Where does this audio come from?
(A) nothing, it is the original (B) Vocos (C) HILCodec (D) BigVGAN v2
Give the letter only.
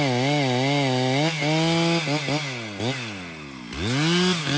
A